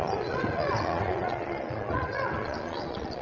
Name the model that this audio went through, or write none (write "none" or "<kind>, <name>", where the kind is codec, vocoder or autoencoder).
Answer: vocoder, Vocos